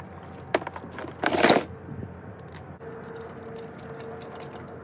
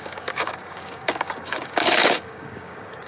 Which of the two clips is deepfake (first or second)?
second